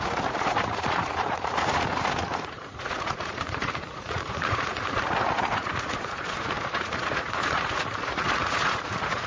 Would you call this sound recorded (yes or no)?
no